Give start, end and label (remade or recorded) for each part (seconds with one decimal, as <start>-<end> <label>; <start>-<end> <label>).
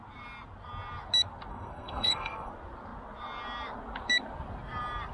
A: 0.0-1.5 recorded; 1.5-2.5 remade; 2.5-5.1 recorded